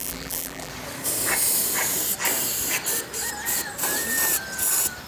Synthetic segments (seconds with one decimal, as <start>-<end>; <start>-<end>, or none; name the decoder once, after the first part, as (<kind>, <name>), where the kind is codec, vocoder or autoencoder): 0.0-0.7 (vocoder, BigVGAN v2)

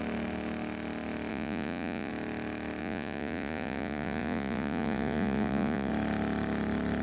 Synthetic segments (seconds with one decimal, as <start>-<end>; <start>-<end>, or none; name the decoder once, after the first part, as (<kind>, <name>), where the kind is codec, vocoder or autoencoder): 1.3-2.1 (vocoder, Vocos); 2.8-5.9

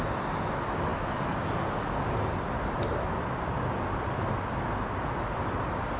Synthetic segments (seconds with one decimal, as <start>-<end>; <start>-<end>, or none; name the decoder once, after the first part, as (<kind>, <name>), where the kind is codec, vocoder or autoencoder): none

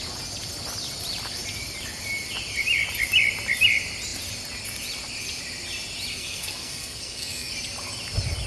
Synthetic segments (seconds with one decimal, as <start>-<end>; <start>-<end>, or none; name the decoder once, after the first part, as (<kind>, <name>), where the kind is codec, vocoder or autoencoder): 6.1-7.5 (codec, SNAC)

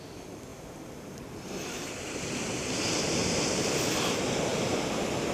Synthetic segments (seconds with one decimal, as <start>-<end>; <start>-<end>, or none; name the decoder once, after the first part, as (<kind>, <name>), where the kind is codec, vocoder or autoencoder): 0.5-2.4 (vocoder, BigVGAN v2); 3.2-4.1; 4.5-5.3

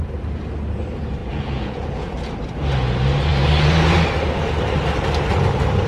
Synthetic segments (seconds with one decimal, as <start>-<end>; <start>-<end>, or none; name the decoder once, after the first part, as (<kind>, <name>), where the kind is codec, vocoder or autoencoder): 1.2-2.1 (vocoder, Vocos)

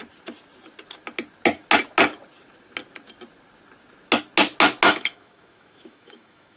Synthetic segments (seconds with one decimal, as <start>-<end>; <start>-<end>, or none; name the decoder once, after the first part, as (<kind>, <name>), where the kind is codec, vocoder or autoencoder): 4.9-6.6 (autoencoder, DAC-VAE)

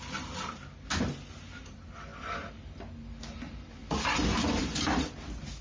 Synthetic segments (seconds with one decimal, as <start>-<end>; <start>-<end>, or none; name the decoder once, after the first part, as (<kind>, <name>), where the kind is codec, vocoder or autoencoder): 3.8-5.1 (vocoder, BigVGAN v2)